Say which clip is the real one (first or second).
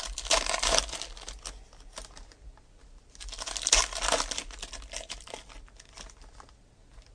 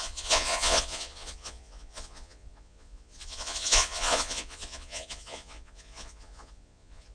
first